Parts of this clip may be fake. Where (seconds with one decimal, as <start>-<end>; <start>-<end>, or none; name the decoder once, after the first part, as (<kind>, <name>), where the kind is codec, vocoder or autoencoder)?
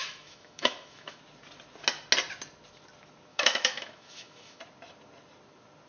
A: 0.0-1.2 (autoencoder, DAC-VAE); 3.3-4.6